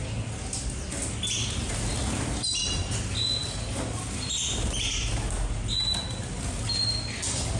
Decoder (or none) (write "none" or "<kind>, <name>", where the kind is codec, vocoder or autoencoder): none